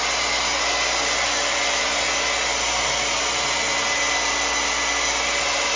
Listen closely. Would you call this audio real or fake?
real